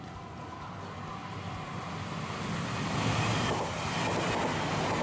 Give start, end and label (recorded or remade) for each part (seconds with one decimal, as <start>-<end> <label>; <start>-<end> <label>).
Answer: 0.0-5.0 recorded